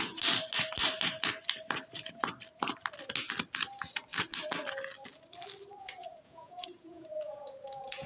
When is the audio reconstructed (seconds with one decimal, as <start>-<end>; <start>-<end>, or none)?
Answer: 6.0-8.1

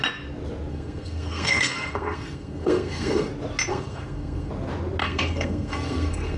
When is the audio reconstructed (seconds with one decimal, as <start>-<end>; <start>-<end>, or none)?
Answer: 0.7-3.3; 3.7-4.5; 5.0-6.4

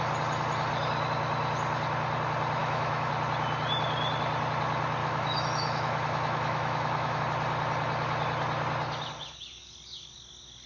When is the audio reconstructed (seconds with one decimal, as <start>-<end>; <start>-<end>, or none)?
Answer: 2.6-3.1; 5.0-7.2

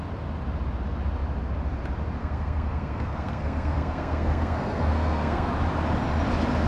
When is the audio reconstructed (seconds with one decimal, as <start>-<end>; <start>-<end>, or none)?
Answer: 2.2-5.5

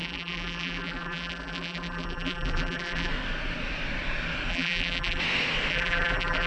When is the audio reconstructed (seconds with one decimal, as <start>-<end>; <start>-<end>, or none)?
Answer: 0.0-3.1; 4.5-5.2; 5.7-6.5

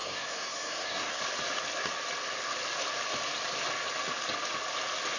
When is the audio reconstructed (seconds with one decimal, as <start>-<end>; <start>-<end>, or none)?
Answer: 0.0-1.2